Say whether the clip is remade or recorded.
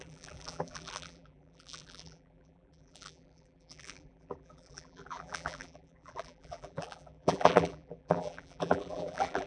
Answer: remade